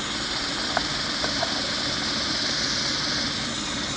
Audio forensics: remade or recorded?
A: recorded